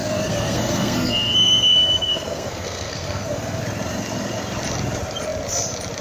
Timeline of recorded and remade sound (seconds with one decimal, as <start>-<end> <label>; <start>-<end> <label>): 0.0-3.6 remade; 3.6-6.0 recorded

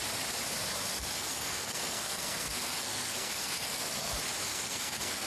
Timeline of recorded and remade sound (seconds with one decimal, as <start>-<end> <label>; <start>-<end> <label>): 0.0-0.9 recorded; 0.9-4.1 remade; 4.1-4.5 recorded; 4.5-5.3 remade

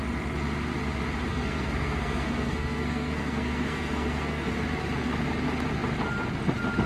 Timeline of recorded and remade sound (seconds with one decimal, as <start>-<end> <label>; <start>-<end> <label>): 0.0-1.3 recorded; 1.3-4.5 remade; 4.5-6.9 recorded

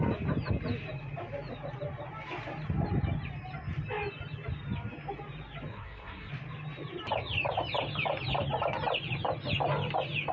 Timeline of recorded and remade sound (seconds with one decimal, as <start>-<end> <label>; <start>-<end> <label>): 0.0-5.7 recorded; 5.7-6.3 remade; 6.3-10.3 recorded

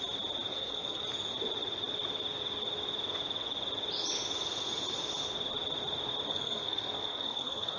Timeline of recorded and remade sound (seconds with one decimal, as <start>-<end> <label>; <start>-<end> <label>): 0.0-0.5 recorded; 0.5-1.0 remade; 1.0-6.3 recorded; 6.3-7.8 remade

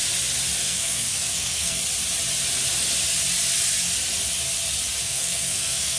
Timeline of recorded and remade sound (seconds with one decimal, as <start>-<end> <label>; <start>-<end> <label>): 0.0-0.6 recorded; 0.6-1.8 remade; 1.8-5.0 recorded; 5.0-6.0 remade

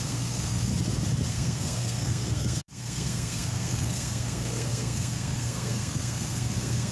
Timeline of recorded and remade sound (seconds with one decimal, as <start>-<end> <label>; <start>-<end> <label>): 0.0-0.7 remade; 0.7-1.3 recorded; 1.3-6.9 remade